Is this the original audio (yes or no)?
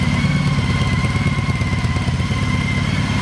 yes